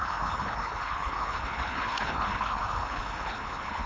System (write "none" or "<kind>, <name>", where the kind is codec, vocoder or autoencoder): codec, HILCodec